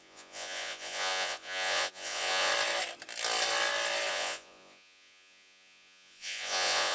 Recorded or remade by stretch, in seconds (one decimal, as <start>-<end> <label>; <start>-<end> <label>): 0.0-2.5 remade; 2.5-4.1 recorded; 4.1-6.9 remade